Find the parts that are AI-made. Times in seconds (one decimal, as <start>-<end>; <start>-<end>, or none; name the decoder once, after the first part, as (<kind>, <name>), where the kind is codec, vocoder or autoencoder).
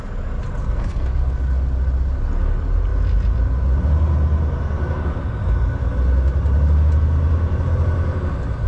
0.6-1.4 (codec, SNAC)